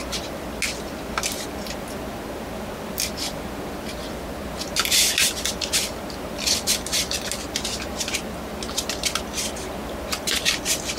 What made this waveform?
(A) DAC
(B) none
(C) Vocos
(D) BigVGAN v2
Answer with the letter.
B